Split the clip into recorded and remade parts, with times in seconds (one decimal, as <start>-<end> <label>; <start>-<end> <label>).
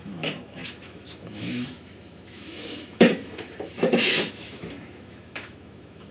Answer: 0.0-6.1 remade